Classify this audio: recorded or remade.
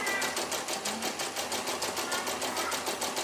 recorded